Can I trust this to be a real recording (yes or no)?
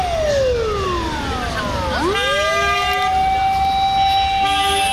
yes